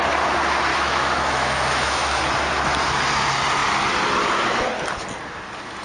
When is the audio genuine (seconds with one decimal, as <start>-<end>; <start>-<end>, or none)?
0.0-0.7; 2.2-5.8